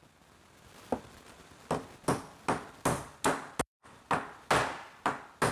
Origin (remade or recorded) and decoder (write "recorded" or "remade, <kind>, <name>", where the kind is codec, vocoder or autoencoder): recorded